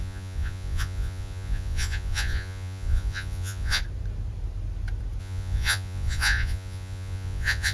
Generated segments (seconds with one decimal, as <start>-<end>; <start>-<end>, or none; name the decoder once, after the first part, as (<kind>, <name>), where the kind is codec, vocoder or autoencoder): 0.0-3.8 (vocoder, Vocos); 5.2-7.7